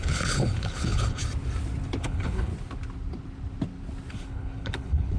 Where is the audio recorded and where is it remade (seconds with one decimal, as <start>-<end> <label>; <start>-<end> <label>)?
0.0-1.2 remade; 1.2-2.0 recorded; 2.0-2.5 remade; 2.5-4.1 recorded; 4.1-5.2 remade